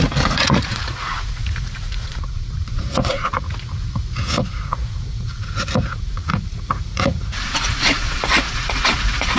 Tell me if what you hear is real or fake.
fake